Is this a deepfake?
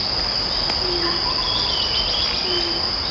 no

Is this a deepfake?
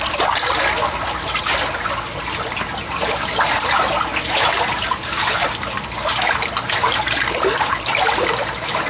no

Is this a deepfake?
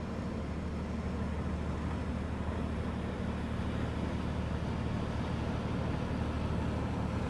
no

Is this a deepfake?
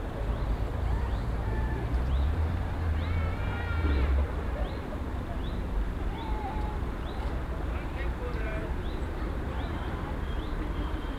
yes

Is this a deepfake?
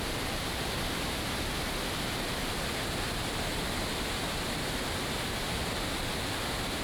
no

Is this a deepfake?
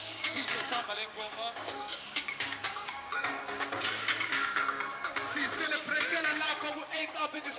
yes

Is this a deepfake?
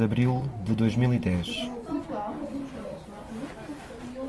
no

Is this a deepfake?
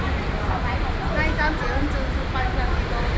no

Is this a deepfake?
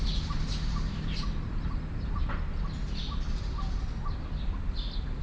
no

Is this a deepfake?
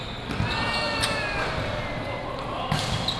no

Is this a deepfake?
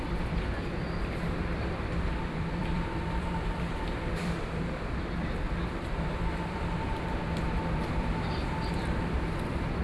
yes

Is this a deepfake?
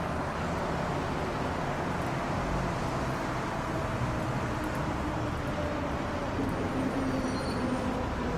no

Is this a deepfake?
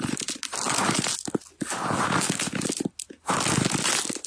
no